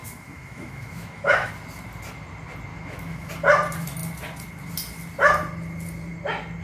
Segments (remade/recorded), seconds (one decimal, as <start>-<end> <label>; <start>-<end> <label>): 0.0-1.5 remade; 1.5-2.7 recorded; 2.7-3.3 remade; 3.3-6.6 recorded